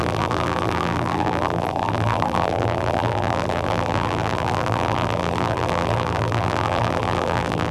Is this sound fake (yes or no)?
yes